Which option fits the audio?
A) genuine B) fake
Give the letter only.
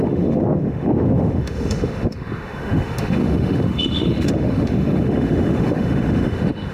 B